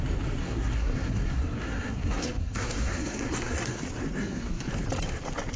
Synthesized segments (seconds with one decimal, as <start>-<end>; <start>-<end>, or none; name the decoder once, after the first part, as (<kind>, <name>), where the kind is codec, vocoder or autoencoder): 0.4-3.8 (codec, SNAC); 4.2-4.7